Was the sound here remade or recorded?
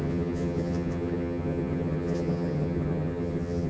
remade